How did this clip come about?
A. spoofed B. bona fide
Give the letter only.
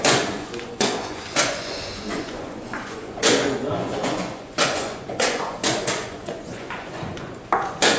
A